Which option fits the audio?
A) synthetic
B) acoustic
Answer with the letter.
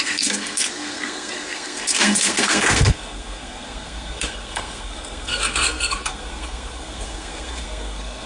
A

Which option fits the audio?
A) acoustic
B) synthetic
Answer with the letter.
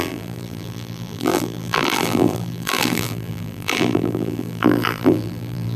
B